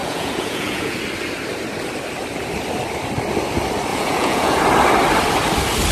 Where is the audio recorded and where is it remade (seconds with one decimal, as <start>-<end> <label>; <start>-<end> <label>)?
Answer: 0.0-1.0 remade; 1.0-3.9 recorded; 3.9-4.6 remade; 4.6-5.9 recorded